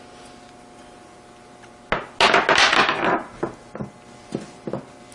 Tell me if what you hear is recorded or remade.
recorded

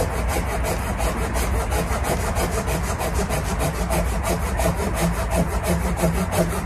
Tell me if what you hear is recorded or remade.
recorded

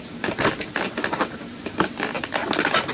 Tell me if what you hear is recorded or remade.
recorded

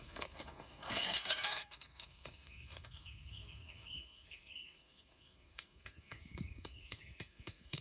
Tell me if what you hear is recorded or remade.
remade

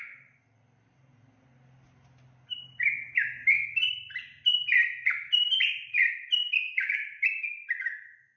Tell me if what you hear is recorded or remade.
recorded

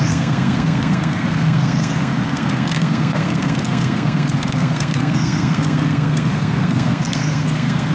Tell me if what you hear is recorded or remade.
remade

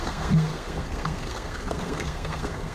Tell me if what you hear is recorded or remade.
remade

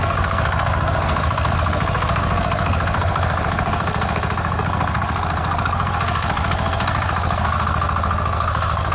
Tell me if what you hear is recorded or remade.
remade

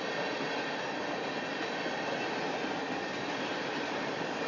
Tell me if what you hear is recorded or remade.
recorded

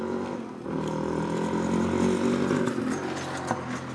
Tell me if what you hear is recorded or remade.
recorded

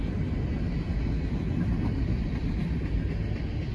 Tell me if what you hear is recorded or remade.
recorded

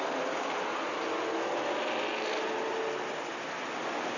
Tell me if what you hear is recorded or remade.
recorded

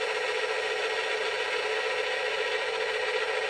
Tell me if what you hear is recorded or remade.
recorded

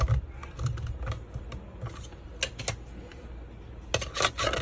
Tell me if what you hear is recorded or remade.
recorded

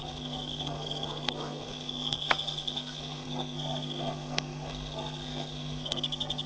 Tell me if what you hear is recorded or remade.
remade